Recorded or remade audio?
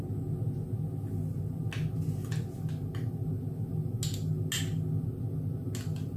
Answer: recorded